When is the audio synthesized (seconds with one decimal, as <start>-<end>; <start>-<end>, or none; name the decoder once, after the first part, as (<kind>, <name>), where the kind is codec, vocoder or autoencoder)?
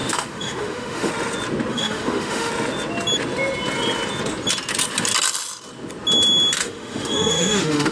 0.0-1.1 (autoencoder, DAC-VAE); 1.7-2.5; 6.6-7.9